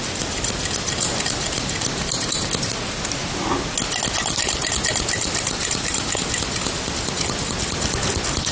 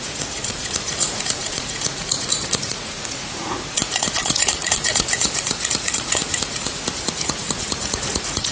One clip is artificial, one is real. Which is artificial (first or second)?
second